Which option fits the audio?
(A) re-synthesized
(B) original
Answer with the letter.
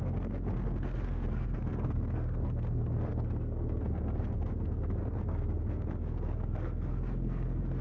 A